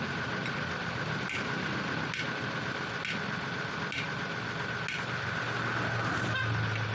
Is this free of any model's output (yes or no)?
yes